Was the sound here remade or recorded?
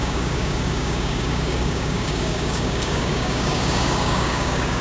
remade